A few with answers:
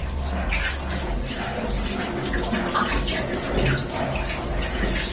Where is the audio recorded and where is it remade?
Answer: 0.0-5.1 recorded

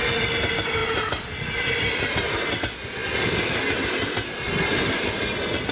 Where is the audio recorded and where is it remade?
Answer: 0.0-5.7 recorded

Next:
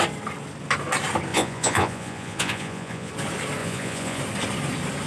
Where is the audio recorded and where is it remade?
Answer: 0.0-1.3 recorded; 1.3-3.1 remade; 3.1-3.6 recorded; 3.6-4.2 remade; 4.2-5.1 recorded

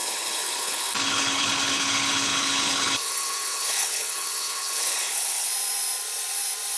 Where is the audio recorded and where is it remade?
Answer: 0.0-5.5 remade; 5.5-6.8 recorded